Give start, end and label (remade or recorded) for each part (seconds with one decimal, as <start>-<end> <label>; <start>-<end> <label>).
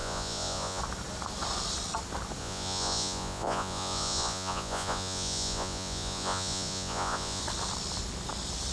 0.0-0.8 remade; 0.8-2.4 recorded; 2.4-7.4 remade; 7.4-8.7 recorded